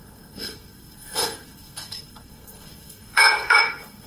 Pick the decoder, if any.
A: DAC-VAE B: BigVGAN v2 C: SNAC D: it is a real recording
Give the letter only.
C